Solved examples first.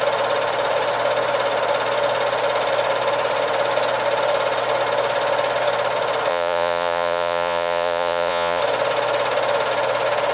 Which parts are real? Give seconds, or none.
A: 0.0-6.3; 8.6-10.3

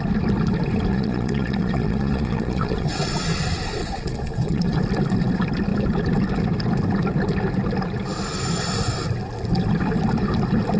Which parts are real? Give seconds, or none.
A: 0.0-0.9; 3.4-3.8; 4.8-10.8

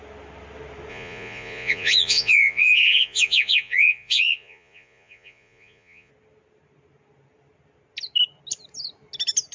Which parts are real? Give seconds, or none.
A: 0.0-0.9; 6.1-9.5